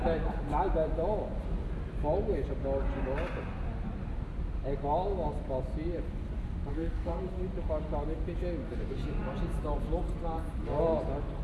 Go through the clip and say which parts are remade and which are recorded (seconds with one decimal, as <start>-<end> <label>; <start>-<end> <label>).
0.0-6.7 recorded; 6.7-7.3 remade; 7.3-11.4 recorded